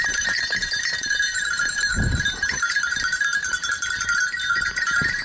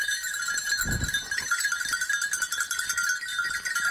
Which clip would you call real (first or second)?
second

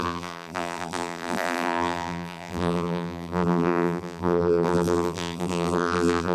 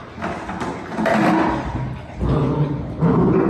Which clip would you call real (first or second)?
second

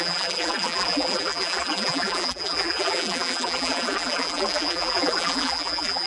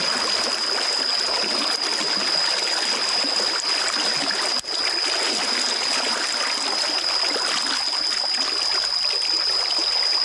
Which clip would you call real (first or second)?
second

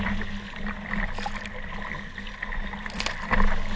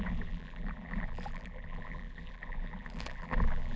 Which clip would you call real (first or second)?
first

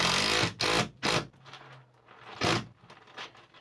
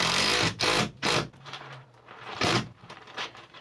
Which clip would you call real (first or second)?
first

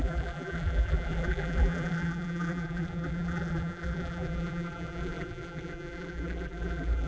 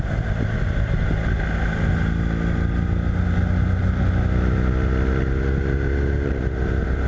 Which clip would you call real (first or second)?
second